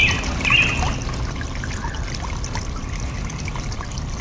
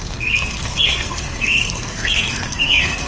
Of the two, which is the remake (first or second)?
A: second